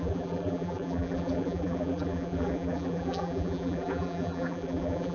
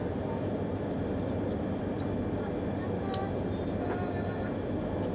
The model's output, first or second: first